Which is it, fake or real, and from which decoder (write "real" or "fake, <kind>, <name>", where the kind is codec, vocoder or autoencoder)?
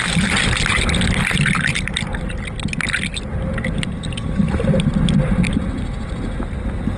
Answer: real